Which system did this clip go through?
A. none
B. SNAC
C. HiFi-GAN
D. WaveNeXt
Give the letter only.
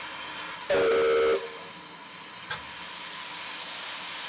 A